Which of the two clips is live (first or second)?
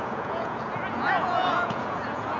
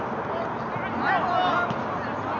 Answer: second